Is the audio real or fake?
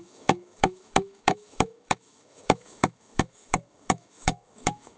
fake